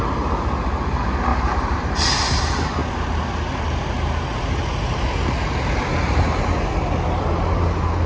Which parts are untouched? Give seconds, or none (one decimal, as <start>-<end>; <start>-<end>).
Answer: 0.0-1.3; 2.4-4.3; 6.5-8.1